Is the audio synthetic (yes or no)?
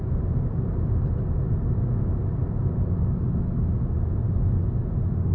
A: no